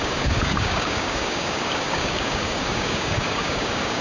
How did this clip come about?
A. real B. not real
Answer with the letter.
B